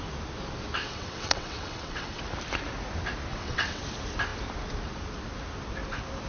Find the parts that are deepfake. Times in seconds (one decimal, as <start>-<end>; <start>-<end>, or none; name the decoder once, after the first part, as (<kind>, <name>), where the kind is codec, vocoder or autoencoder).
0.8-2.2 (vocoder, WaveNeXt); 3.3-3.8